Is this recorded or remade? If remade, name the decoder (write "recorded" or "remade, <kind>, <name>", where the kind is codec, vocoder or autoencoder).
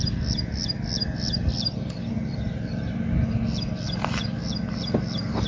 recorded